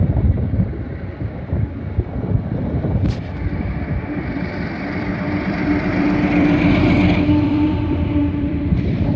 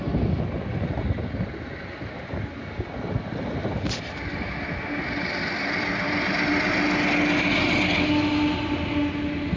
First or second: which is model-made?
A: first